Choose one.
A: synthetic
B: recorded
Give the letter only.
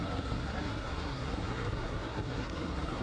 A